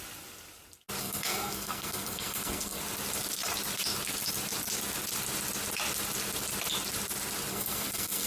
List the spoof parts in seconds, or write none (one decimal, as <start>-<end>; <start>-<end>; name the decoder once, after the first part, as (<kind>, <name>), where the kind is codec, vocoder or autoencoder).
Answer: 1.0-2.8 (codec, SNAC); 7.5-8.3